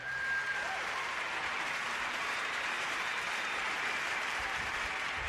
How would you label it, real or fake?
fake